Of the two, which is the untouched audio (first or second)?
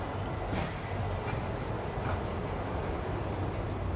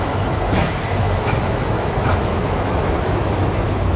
first